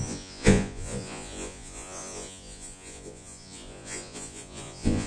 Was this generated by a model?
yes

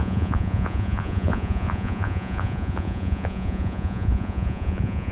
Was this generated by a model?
yes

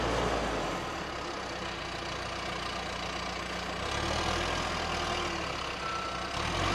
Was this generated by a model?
no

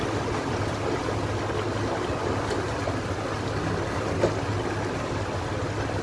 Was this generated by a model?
no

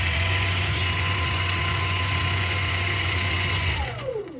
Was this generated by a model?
yes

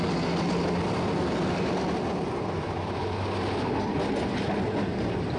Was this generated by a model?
no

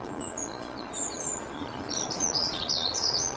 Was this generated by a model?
yes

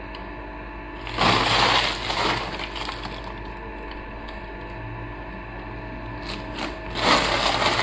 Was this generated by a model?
no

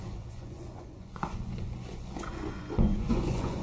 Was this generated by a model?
yes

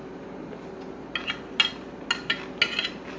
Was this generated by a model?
no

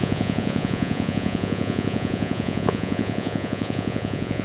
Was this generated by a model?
yes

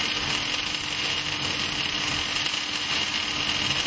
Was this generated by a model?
no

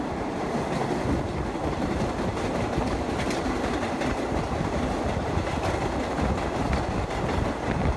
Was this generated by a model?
no